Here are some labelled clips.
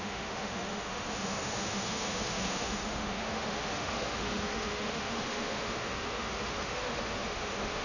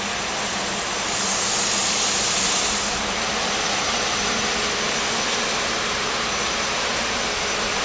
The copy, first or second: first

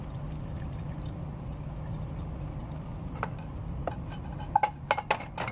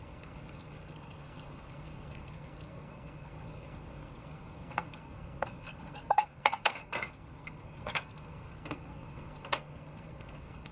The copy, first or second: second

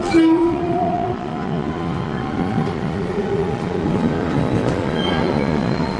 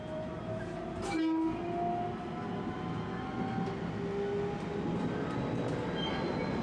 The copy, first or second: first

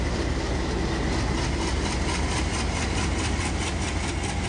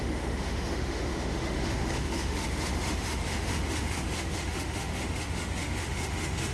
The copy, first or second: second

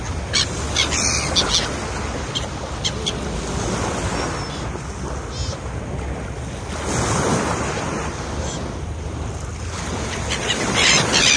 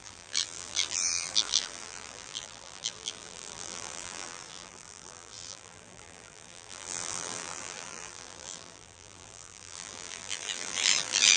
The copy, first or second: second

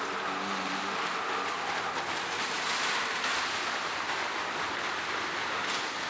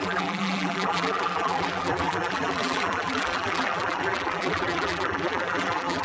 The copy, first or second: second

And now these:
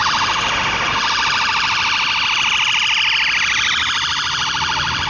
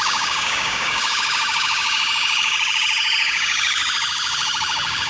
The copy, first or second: second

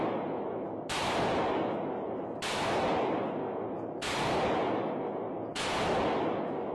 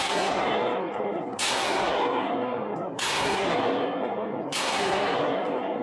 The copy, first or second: second